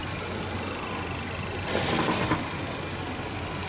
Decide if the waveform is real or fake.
real